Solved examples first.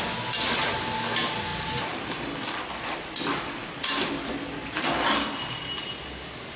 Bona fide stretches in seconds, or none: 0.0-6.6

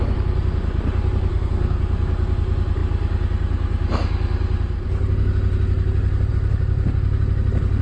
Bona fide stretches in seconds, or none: 0.0-1.3; 1.8-7.8

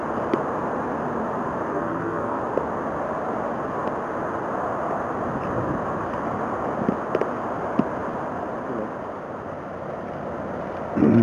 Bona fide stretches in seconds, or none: 0.0-1.7; 2.4-11.2